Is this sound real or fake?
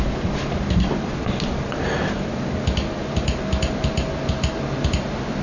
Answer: real